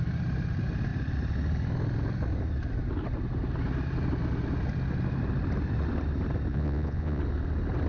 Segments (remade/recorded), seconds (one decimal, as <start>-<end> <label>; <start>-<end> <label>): 0.0-6.5 recorded; 6.5-7.2 remade; 7.2-7.9 recorded